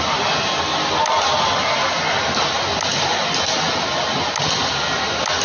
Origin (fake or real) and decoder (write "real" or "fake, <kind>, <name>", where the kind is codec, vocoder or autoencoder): real